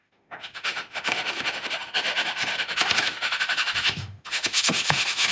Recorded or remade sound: remade